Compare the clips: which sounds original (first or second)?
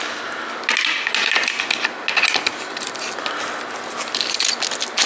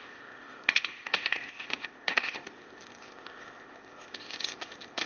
first